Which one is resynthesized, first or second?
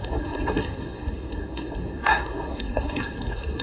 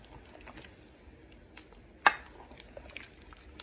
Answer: first